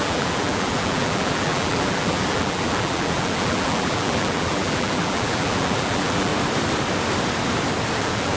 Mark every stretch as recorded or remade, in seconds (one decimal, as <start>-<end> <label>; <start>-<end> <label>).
0.0-6.3 remade; 6.3-8.0 recorded; 8.0-8.4 remade